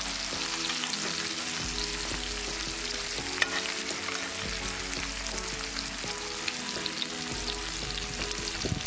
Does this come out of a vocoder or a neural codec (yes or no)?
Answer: no